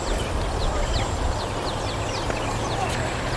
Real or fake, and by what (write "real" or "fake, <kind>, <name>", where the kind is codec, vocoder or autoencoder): real